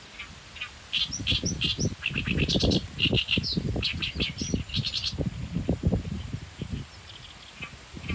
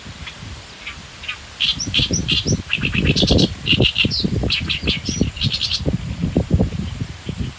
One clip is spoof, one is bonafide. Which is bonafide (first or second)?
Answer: first